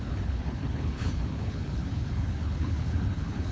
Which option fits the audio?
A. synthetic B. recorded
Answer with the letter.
A